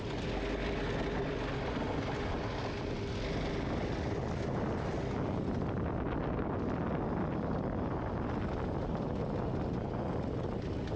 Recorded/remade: recorded